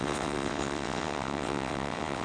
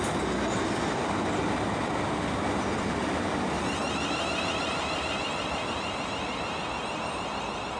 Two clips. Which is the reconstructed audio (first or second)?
first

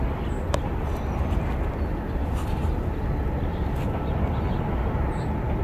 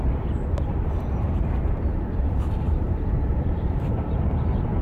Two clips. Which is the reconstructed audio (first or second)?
second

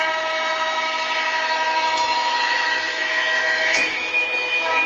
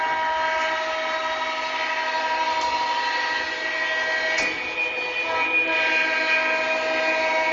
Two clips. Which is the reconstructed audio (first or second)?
first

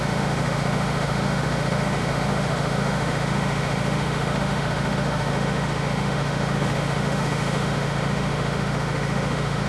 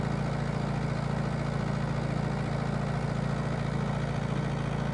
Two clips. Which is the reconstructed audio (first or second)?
first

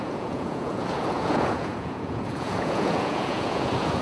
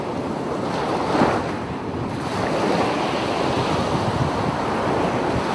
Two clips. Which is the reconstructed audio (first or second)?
first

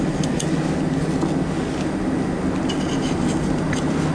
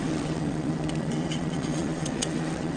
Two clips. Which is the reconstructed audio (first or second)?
second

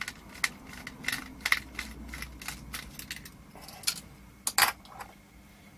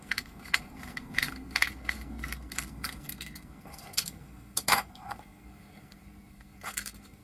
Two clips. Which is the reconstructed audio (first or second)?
second